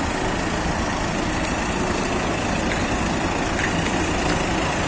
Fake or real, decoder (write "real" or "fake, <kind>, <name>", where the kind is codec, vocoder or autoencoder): real